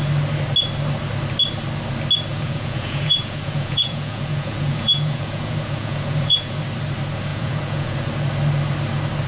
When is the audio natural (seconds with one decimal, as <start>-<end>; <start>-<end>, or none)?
0.0-2.3; 6.6-7.3; 8.1-9.3